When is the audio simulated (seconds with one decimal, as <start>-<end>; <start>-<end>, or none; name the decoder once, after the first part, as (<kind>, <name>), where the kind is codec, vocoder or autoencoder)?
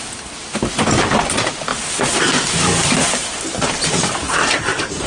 1.7-5.1 (vocoder, BigVGAN v2)